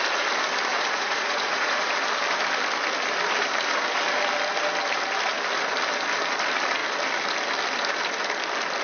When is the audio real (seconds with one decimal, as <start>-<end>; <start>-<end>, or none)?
0.0-0.7; 1.9-8.8